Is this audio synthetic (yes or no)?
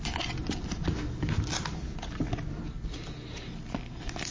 no